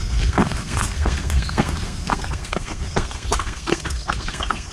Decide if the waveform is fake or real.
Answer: fake